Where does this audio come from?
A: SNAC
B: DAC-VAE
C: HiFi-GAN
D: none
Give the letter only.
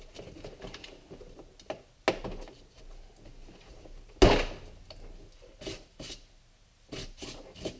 D